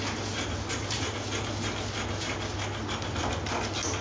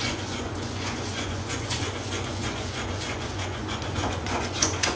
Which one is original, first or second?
first